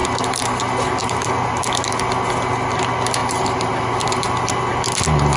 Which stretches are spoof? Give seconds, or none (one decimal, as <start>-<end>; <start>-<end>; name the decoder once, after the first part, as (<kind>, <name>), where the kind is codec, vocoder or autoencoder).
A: 0.0-0.6 (vocoder, BigVGAN v2); 1.0-1.6; 3.2-4.6